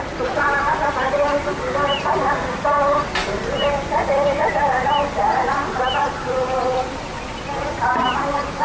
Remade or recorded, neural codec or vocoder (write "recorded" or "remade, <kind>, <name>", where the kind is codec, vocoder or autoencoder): recorded